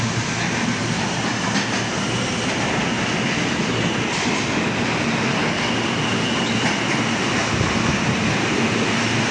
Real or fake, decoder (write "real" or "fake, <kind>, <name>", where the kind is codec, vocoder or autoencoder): real